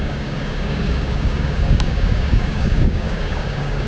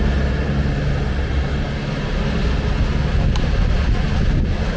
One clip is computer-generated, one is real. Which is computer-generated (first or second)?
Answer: first